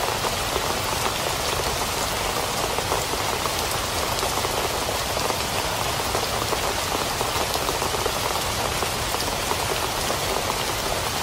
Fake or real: real